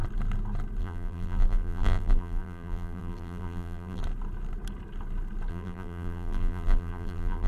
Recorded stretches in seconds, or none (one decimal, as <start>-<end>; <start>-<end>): 0.0-0.8; 4.0-5.5